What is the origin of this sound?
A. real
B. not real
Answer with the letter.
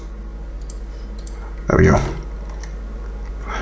A